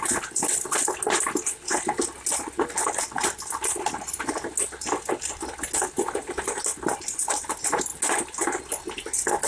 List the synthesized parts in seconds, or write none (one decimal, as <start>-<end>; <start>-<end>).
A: none